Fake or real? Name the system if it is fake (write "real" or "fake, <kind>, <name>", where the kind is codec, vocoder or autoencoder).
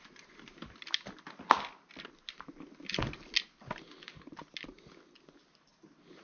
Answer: real